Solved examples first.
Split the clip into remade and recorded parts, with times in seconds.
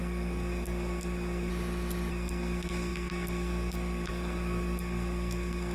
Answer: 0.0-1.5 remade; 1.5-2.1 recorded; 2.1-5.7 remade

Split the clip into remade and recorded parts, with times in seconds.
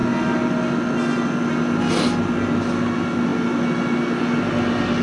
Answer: 0.0-5.0 recorded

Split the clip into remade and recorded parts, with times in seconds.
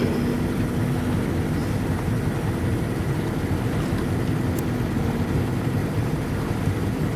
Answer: 0.0-7.2 recorded